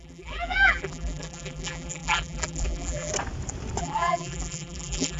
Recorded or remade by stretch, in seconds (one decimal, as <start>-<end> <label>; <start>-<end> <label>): 0.0-3.1 remade; 3.1-3.8 recorded; 3.8-5.2 remade